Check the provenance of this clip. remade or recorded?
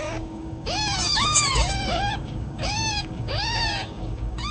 remade